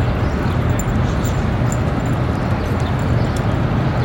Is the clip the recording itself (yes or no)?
yes